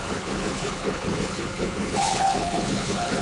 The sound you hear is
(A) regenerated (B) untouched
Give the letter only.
A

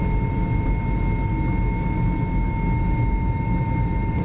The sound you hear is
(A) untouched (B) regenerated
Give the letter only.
A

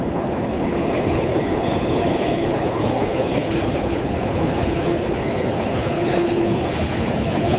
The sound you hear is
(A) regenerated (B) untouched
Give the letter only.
A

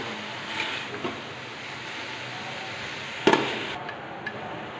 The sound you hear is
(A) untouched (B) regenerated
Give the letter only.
A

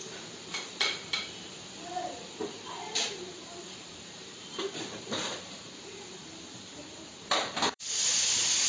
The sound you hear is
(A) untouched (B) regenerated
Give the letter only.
B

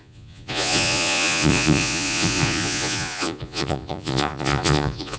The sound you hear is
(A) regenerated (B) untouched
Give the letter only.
A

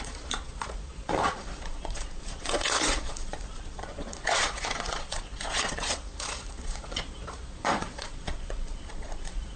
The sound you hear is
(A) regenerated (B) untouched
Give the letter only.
A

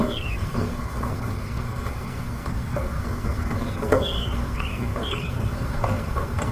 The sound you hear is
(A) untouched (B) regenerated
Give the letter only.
B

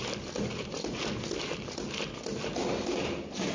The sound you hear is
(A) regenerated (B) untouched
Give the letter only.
B